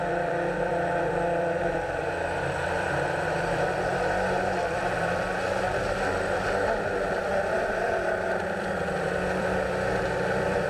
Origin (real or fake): fake